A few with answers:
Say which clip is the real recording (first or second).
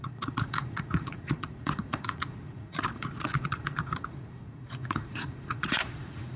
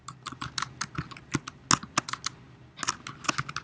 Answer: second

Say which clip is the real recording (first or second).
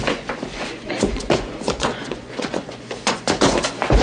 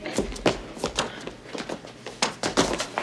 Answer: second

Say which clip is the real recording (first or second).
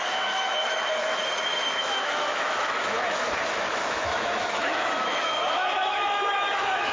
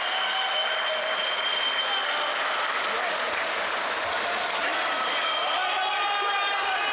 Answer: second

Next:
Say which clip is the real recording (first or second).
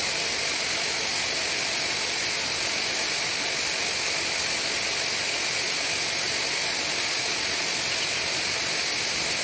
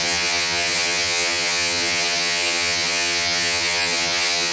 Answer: first